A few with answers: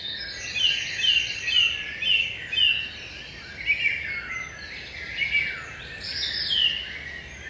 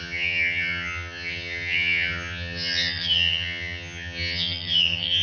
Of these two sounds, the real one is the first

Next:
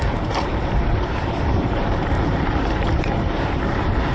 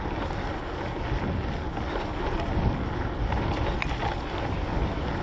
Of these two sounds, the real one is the second